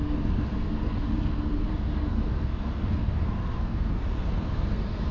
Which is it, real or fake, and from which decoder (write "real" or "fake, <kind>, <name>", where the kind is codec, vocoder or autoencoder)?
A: fake, codec, SNAC